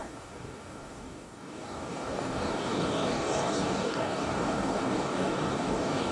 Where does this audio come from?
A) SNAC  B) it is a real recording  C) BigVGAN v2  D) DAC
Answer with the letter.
D